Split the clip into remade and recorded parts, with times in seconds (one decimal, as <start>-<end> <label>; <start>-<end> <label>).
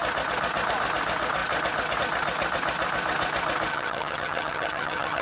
0.0-3.7 recorded; 3.7-5.2 remade